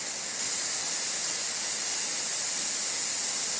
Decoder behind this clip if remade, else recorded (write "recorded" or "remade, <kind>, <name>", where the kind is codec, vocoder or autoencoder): recorded